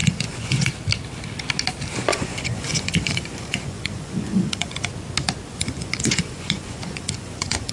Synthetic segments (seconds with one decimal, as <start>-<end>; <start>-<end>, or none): 0.0-0.7; 2.1-4.9; 5.5-7.7